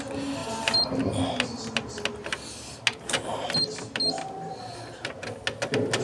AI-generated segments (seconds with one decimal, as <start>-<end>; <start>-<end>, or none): none